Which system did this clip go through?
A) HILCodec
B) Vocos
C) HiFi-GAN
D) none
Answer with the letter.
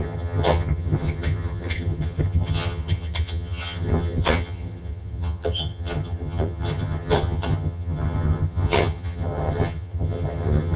C